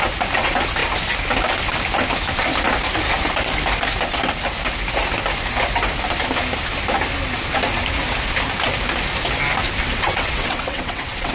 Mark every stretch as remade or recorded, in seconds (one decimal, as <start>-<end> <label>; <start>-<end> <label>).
0.0-9.8 recorded; 9.8-11.3 remade